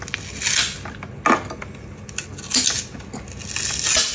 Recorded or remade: recorded